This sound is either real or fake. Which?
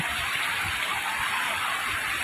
real